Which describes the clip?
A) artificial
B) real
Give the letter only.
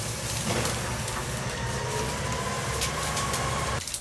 A